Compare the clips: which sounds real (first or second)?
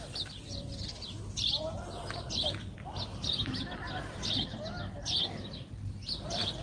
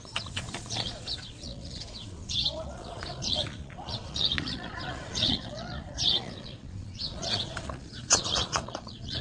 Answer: first